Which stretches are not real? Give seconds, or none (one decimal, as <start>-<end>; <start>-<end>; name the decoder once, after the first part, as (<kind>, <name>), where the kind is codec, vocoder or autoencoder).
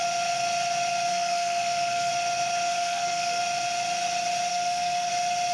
1.1-2.1 (codec, SNAC); 2.7-3.4; 4.5-5.1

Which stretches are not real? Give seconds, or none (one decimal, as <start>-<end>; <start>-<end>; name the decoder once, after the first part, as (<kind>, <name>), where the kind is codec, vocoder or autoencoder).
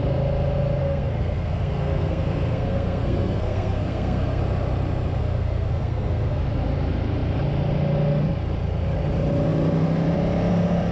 0.8-4.4 (codec, SNAC); 5.2-6.4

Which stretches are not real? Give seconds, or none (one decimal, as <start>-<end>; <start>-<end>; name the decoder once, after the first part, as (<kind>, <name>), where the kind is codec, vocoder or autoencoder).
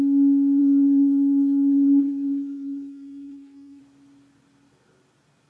0.6-3.8 (codec, SNAC)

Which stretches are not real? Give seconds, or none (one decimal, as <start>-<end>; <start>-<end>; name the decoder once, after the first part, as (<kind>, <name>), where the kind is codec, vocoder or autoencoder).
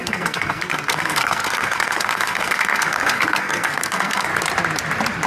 0.0-4.3 (codec, SNAC)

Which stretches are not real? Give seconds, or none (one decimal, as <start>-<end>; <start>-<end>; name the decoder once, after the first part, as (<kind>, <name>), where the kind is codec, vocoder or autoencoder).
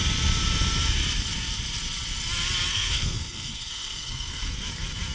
2.7-4.5 (codec, SNAC)